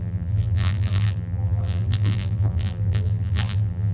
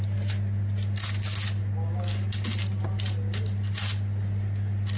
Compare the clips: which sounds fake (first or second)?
first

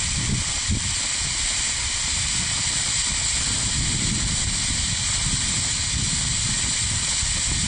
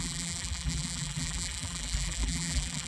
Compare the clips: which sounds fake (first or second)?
second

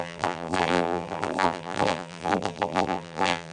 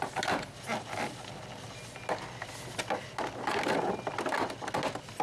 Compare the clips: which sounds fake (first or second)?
first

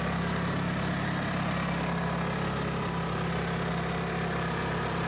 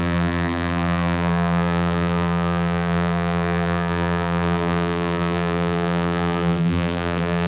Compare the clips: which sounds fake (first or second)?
second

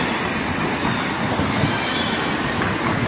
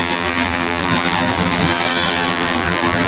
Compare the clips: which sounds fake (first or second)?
second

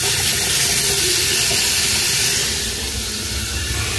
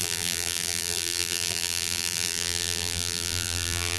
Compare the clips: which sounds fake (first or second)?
second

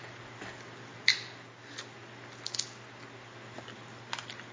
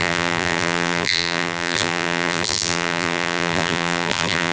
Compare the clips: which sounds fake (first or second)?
second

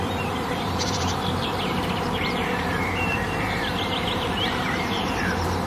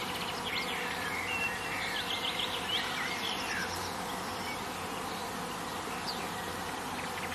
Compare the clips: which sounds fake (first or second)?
first